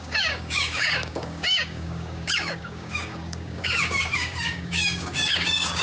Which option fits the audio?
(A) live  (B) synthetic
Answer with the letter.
B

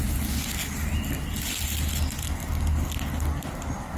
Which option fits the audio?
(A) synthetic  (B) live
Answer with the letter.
B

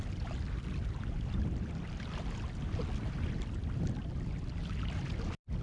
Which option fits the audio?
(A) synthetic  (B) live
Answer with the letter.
B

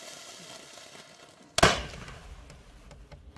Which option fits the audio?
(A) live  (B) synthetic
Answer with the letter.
A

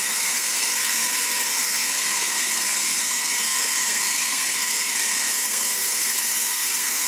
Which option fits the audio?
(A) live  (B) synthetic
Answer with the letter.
B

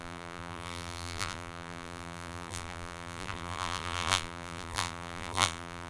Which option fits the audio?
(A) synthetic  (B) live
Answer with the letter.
A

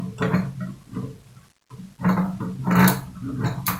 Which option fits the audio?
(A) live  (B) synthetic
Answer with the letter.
A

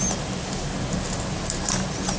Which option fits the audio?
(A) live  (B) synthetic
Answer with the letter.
A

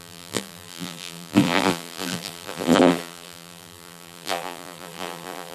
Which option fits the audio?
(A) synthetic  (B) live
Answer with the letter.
A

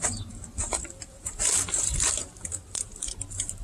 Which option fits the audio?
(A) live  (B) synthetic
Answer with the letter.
B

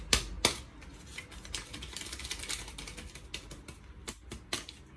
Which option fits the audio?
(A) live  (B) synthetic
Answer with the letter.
A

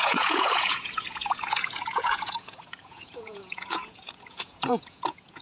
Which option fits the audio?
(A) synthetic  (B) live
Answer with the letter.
A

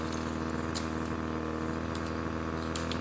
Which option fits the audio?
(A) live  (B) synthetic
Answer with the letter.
A